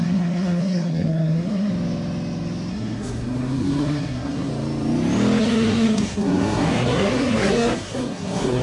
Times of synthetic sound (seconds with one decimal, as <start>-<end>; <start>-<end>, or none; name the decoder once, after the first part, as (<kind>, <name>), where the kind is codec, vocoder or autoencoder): 0.0-1.7 (codec, SNAC); 2.7-4.5; 5.4-8.6